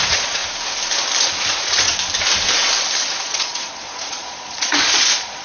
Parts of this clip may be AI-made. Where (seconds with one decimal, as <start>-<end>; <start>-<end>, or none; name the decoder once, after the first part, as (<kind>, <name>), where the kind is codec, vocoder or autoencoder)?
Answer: 0.0-0.4 (vocoder, Vocos); 1.4-1.9; 3.2-5.4